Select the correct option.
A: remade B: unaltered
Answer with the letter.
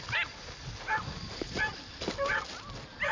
B